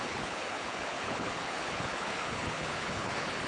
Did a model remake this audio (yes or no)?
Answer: yes